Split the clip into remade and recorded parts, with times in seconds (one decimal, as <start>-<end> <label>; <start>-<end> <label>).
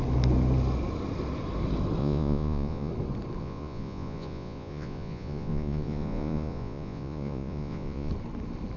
0.0-2.0 recorded; 2.0-2.9 remade; 2.9-3.4 recorded; 3.4-8.1 remade; 8.1-8.8 recorded